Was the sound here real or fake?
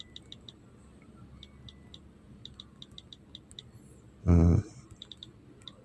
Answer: real